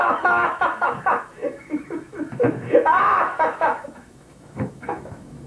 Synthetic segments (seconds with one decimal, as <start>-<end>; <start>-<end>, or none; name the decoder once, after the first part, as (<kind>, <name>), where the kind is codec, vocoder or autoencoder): 0.0-5.5 (autoencoder, DAC-VAE)